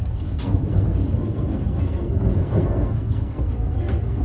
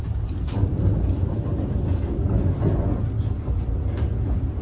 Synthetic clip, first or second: first